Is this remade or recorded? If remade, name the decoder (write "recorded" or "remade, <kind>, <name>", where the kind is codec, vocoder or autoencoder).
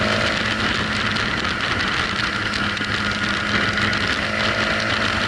recorded